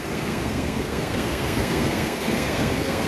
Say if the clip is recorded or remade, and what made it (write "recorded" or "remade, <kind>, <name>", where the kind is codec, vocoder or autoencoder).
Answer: remade, codec, SNAC